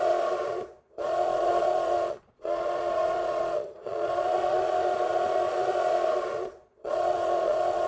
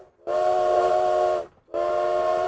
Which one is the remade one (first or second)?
first